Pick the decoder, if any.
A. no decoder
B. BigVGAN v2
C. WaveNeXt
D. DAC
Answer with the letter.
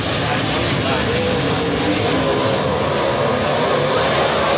A